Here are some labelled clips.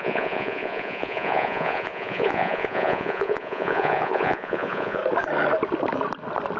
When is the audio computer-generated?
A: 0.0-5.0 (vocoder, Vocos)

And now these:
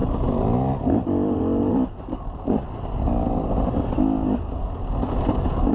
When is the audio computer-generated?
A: none

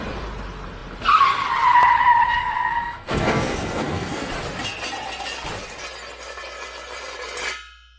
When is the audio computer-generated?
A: 2.4-4.3 (codec, SNAC)

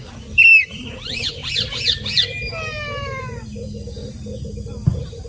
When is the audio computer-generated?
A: none

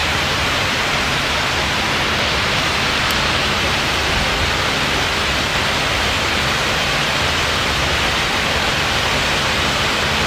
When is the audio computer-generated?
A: 0.0-4.1 (vocoder, BigVGAN v2); 5.5-7.8

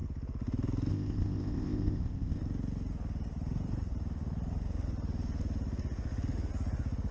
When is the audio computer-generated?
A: 0.9-2.4 (codec, ZipCodec)

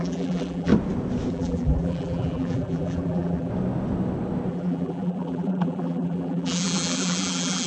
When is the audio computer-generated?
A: 0.0-0.7 (vocoder, BigVGAN v2); 1.3-3.5; 4.5-7.7

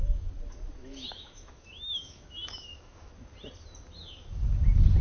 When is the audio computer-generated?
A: 0.8-3.1 (autoencoder, DAC-VAE)